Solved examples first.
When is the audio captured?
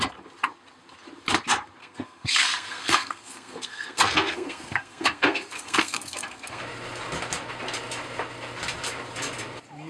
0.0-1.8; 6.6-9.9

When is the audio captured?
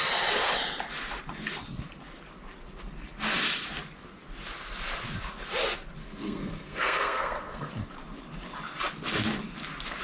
0.0-6.0; 7.7-10.0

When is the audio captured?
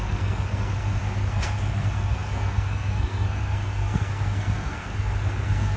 none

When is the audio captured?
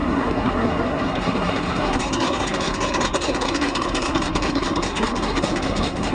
none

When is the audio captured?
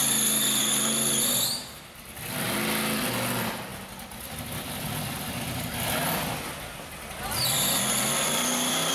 0.0-8.9